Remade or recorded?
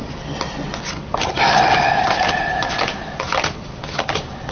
recorded